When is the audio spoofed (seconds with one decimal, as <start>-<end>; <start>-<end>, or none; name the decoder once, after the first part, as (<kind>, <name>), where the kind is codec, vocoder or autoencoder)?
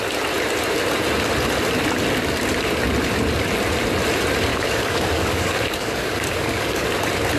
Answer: 4.5-6.9 (codec, DAC)